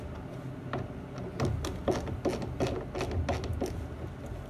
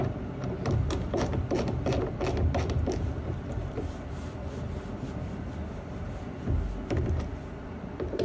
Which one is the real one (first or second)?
first